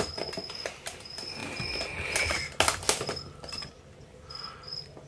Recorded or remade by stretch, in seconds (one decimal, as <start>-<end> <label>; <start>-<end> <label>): 0.0-5.1 recorded